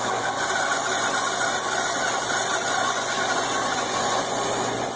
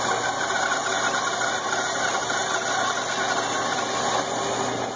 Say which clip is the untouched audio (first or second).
second